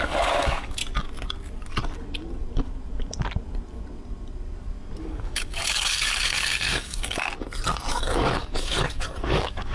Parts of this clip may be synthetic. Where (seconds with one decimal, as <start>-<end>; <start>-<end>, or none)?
0.0-0.8; 5.0-7.3; 7.9-9.7